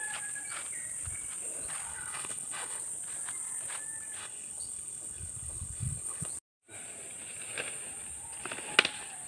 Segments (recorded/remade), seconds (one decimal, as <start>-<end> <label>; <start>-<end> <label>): 0.0-1.9 recorded; 1.9-2.8 remade; 2.8-4.2 recorded; 4.2-6.3 remade; 6.3-9.3 recorded